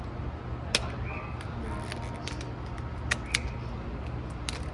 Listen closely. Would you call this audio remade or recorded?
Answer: recorded